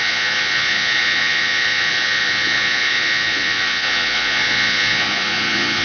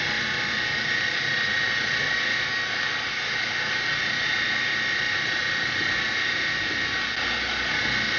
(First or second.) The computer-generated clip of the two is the first